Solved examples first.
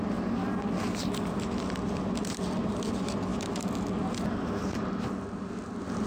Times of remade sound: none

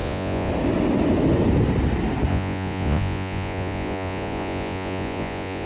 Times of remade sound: 0.0-0.5 (vocoder, Vocos); 2.3-5.7

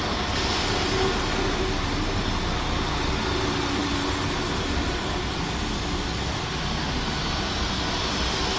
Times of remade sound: none

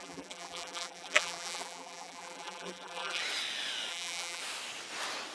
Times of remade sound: 0.0-3.2 (vocoder, BigVGAN v2); 3.9-4.4

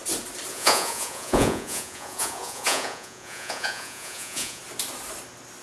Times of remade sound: 0.5-4.6 (vocoder, Vocos)